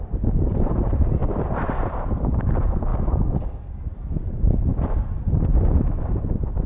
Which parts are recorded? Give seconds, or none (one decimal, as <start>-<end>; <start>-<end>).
2.9-3.8; 4.7-5.6